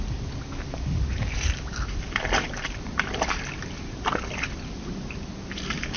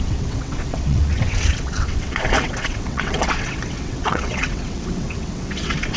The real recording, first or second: first